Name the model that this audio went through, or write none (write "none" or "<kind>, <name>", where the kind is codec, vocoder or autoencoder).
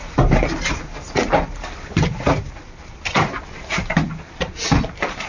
none